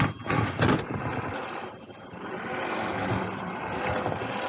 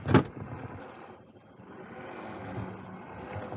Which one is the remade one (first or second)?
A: first